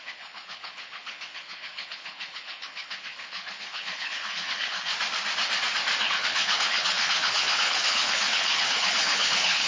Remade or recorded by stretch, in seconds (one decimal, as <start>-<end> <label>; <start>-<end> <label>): 0.0-4.9 remade; 4.9-6.0 recorded; 6.0-9.7 remade